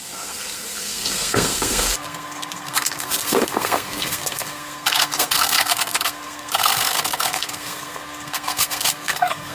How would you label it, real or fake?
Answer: fake